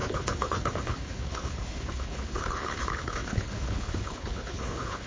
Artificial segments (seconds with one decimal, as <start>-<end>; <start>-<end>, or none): 0.0-5.1